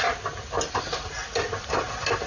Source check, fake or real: real